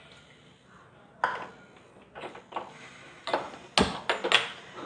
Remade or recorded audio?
recorded